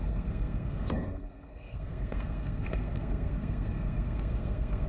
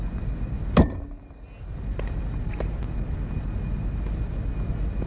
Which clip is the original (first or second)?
second